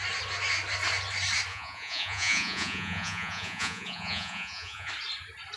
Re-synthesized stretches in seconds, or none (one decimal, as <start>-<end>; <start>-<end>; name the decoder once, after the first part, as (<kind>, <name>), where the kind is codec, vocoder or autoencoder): 1.5-4.9 (vocoder, Vocos)